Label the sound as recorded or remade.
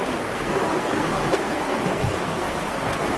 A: remade